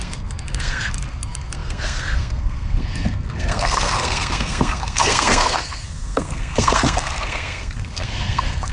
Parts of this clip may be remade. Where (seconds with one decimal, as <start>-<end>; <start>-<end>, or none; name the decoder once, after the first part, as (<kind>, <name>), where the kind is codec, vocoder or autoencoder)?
0.0-8.7 (codec, SNAC)